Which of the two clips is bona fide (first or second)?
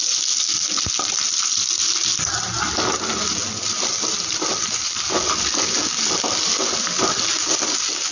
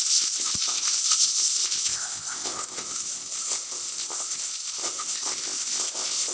first